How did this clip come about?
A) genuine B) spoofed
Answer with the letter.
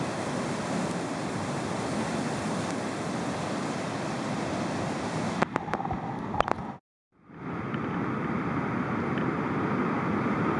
A